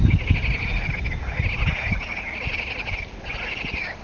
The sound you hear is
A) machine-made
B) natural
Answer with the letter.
B